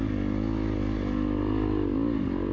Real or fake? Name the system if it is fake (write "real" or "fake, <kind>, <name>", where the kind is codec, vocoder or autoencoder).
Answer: real